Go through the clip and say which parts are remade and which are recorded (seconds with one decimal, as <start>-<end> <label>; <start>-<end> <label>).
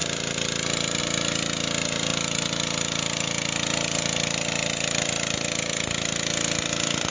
0.0-7.1 recorded